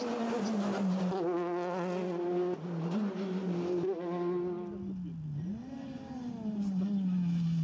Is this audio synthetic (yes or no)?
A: no